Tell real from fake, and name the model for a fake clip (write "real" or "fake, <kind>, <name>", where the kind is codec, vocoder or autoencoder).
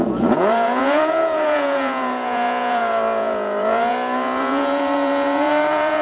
fake, vocoder, Vocos